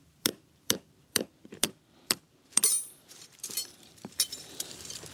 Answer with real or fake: fake